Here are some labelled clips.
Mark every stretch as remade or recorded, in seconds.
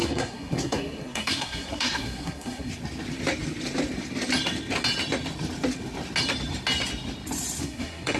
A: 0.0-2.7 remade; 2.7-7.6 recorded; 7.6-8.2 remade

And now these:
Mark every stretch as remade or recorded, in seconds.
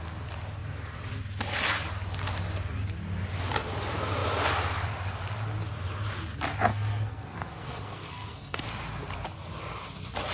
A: 0.0-6.7 recorded; 6.7-8.6 remade; 8.6-10.3 recorded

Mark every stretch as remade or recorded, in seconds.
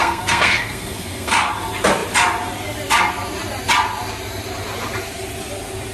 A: 0.0-1.5 remade; 1.5-5.9 recorded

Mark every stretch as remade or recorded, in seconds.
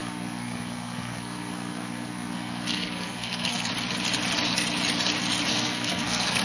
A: 0.0-3.7 remade; 3.7-5.5 recorded; 5.5-6.4 remade